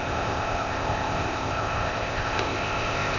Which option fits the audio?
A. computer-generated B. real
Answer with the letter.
A